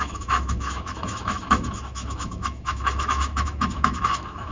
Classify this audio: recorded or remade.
remade